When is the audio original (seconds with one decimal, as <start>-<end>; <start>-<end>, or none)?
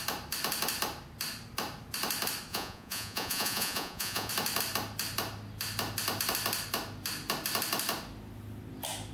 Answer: 0.0-2.5; 4.3-9.1